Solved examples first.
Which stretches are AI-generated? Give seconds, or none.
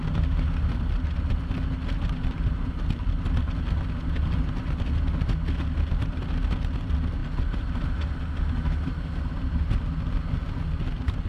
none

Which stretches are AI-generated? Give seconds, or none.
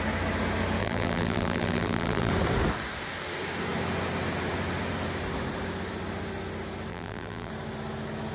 0.8-2.3 (vocoder, BigVGAN v2); 6.9-7.5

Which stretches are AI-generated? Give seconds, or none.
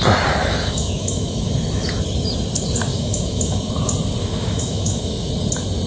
0.4-1.5 (autoencoder, DAC-VAE); 2.9-3.7; 4.2-5.3